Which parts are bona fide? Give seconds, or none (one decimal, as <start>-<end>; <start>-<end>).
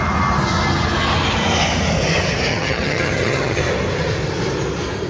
0.0-2.5; 3.6-5.1